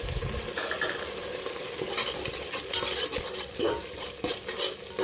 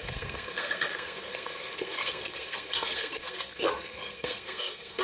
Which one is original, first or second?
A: first